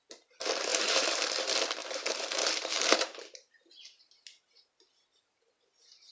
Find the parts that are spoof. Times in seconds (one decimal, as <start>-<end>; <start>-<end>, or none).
0.7-1.3; 1.8-5.5